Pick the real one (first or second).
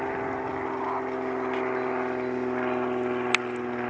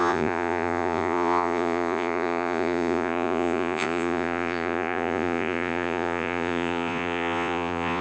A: first